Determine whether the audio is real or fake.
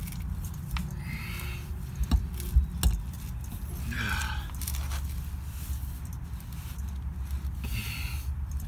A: real